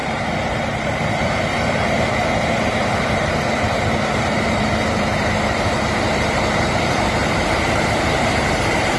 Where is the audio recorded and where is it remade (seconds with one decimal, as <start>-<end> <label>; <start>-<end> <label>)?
0.0-9.0 remade